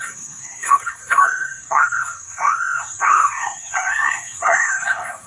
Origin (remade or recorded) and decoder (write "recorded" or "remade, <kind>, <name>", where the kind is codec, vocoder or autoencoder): remade, codec, SNAC